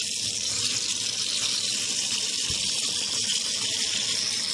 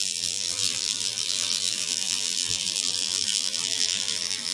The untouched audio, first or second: first